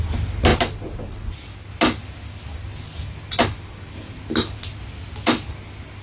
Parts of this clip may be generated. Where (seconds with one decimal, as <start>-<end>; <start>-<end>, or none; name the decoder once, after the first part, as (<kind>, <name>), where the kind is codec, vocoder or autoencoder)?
none